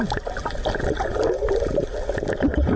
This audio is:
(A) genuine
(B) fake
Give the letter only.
A